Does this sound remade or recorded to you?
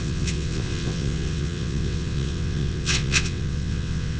remade